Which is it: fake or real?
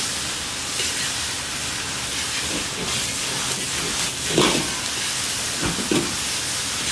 real